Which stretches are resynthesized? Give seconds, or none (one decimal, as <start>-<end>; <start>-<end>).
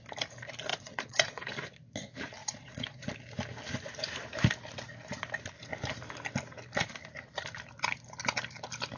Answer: 0.7-1.5; 2.4-3.1